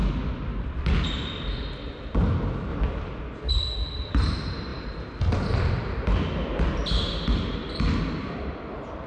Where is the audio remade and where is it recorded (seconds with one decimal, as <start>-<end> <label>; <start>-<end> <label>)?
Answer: 0.0-9.1 recorded